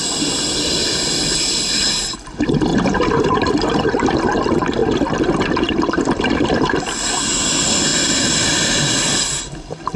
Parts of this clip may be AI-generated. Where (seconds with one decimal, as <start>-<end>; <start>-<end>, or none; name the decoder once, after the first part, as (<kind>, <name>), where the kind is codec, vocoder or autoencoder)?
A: 2.7-3.9 (vocoder, BigVGAN v2); 7.9-8.8